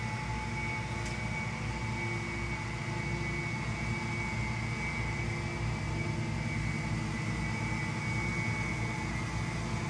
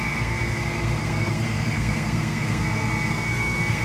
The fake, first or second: second